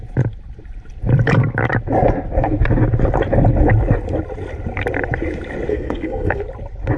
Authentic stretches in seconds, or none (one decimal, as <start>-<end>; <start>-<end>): 0.0-5.7; 6.4-7.0